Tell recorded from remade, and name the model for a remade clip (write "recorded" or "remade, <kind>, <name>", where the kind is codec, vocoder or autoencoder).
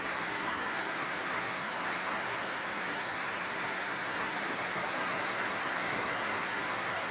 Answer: remade, codec, SNAC